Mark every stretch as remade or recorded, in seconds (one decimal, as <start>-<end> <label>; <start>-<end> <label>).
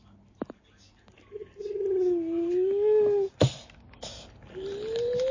0.0-5.3 recorded